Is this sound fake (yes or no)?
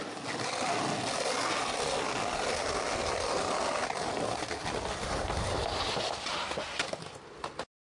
no